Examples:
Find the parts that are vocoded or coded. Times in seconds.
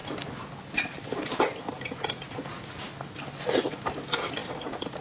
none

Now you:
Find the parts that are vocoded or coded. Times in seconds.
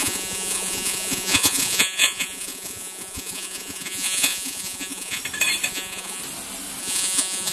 0.0-5.2 (vocoder, Vocos); 5.7-6.2; 6.8-7.5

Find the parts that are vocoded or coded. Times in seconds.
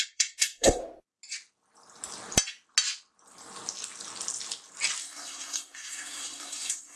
0.0-0.8 (codec, SNAC); 5.0-7.0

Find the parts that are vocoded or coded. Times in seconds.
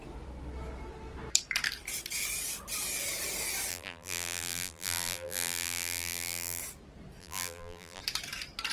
3.7-6.6 (vocoder, BigVGAN v2); 7.2-8.0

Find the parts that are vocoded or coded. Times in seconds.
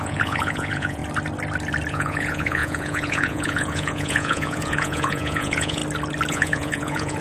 0.0-1.0 (vocoder, Vocos); 1.9-5.8; 6.3-7.2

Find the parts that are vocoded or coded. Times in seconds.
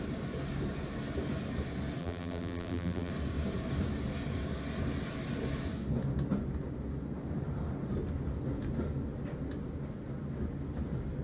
2.0-3.1 (vocoder, BigVGAN v2)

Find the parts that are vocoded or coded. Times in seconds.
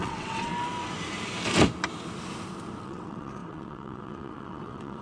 0.0-0.5 (vocoder, WaveNeXt); 2.8-5.0